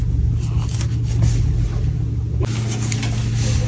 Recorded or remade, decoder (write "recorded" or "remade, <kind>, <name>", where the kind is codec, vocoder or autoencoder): recorded